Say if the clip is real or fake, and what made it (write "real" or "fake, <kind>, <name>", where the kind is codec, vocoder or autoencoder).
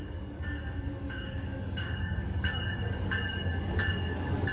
fake, codec, DAC